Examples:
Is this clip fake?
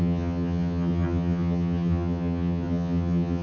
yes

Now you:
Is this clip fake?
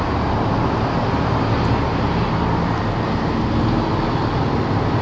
no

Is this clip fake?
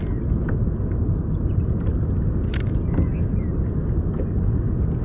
no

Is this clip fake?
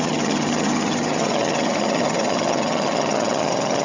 yes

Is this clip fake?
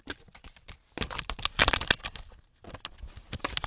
no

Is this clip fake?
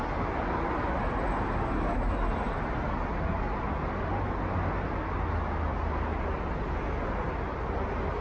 no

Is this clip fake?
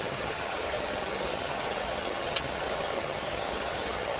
yes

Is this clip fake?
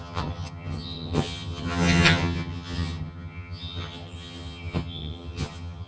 yes